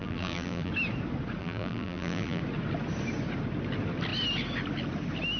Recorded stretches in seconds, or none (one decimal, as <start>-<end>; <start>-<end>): 0.7-1.4; 2.4-5.4